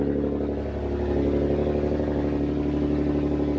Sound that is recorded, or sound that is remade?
recorded